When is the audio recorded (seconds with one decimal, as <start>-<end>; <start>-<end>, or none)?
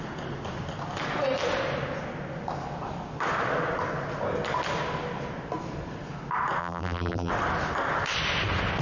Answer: 0.0-6.6; 7.3-8.8